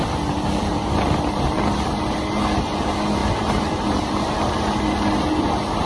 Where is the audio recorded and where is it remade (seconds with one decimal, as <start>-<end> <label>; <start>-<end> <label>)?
0.0-5.9 recorded